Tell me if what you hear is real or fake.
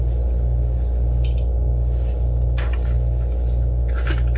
real